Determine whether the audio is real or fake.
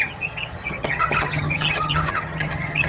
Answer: fake